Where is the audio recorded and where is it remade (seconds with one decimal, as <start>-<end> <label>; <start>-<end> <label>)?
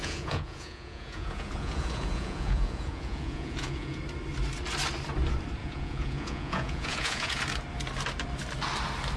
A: 0.0-4.0 remade; 4.0-5.6 recorded; 5.6-7.4 remade; 7.4-9.2 recorded